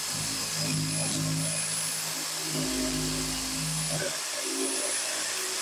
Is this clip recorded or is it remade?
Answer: recorded